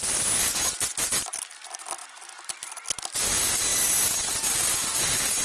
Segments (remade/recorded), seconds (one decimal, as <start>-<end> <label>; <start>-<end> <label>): 0.0-5.4 recorded